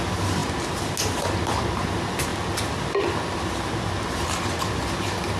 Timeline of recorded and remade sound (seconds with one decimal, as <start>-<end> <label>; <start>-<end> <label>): 0.0-5.4 recorded